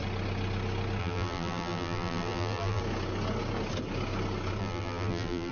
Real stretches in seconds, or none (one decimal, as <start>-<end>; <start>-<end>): 0.0-1.0; 2.8-4.6